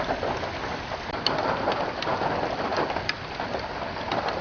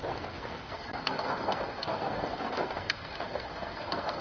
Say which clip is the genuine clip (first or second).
first